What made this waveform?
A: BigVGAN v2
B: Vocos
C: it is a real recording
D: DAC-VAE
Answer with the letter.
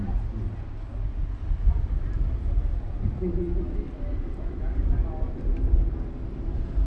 C